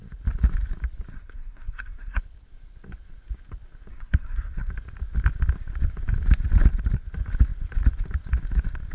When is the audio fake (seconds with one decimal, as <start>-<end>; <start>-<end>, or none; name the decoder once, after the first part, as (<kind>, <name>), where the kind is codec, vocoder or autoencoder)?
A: 1.1-2.2 (codec, SNAC); 3.9-4.7